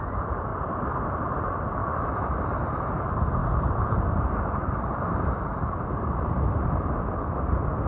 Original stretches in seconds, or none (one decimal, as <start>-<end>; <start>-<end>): 0.0-0.5; 1.4-3.4; 6.4-7.9